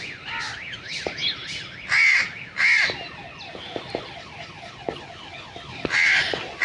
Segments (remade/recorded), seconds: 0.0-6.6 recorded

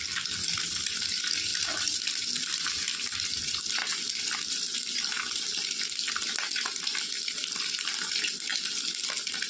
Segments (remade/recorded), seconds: 0.0-9.5 recorded

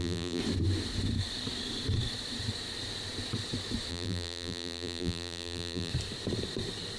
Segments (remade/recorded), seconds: 0.0-0.4 remade; 0.4-3.9 recorded; 3.9-5.9 remade; 5.9-7.0 recorded

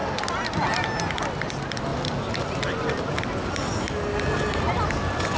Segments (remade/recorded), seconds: 0.0-5.4 recorded

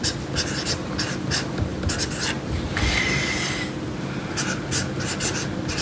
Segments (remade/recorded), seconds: 0.0-5.8 recorded

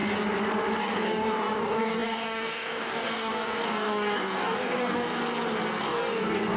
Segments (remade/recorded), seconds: 0.0-0.8 recorded; 0.8-5.1 remade; 5.1-5.8 recorded; 5.8-6.6 remade